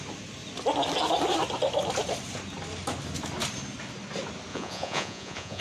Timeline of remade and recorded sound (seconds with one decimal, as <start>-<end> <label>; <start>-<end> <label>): 0.0-4.5 recorded; 4.5-5.6 remade